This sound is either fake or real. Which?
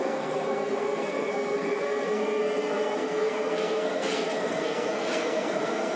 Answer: fake